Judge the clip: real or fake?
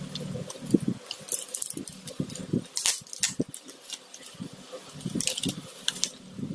real